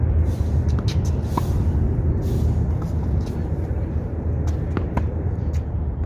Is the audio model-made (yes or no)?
no